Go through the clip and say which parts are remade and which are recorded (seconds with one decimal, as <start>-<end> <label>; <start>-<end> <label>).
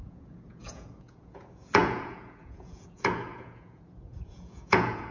0.0-5.1 remade